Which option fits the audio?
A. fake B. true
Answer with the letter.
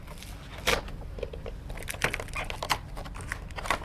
B